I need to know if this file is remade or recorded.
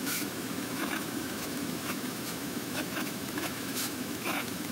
remade